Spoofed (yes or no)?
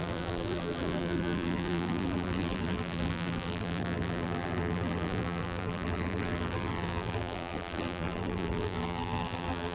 yes